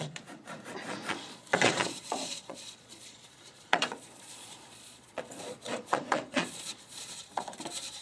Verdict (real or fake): fake